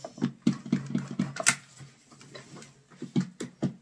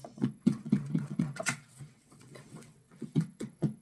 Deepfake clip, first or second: second